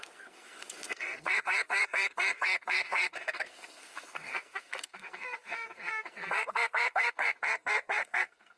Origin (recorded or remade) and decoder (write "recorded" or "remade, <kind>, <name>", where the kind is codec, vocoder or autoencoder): remade, codec, SNAC